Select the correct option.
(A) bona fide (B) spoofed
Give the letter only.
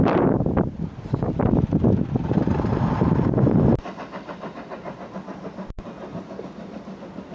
A